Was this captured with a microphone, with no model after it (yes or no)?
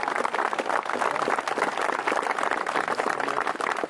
yes